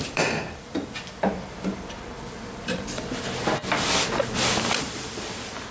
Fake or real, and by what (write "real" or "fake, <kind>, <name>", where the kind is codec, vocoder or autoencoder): fake, vocoder, BigVGAN v2